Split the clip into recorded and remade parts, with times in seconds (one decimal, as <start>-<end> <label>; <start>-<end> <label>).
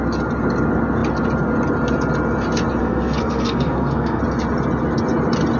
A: 0.0-2.8 recorded; 2.8-4.2 remade; 4.2-5.6 recorded